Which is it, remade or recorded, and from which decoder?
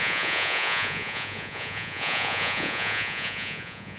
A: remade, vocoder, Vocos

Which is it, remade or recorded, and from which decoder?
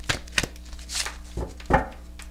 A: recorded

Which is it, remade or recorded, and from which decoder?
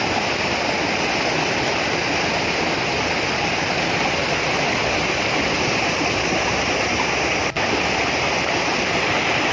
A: recorded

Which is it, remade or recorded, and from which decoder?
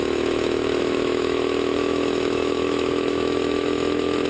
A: remade, autoencoder, DAC-VAE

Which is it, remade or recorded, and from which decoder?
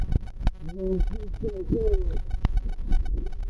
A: recorded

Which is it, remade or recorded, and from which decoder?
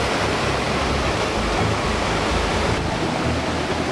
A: recorded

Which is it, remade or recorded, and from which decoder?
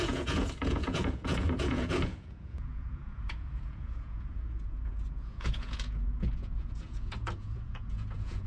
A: remade, vocoder, Vocos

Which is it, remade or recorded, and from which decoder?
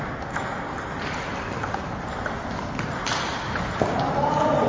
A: remade, vocoder, BigVGAN v2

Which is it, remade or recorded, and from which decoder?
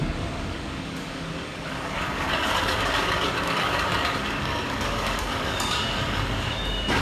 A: remade, codec, DAC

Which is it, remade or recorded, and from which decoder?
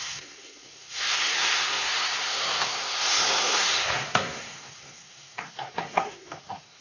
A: remade, codec, SNAC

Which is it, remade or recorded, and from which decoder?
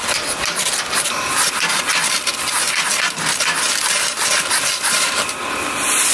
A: recorded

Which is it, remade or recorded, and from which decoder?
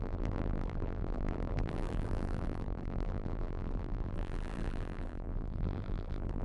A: remade, vocoder, BigVGAN v2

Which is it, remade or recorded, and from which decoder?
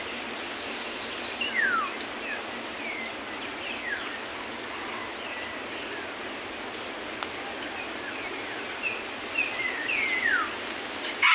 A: recorded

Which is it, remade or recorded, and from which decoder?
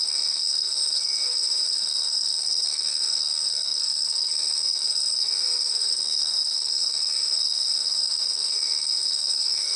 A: remade, codec, SNAC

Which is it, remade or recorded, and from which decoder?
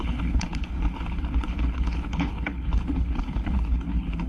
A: remade, codec, HILCodec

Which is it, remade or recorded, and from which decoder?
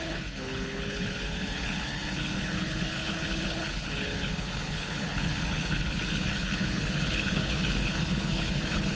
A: remade, codec, HILCodec